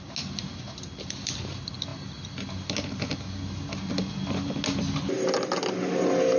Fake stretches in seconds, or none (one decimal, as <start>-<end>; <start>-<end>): none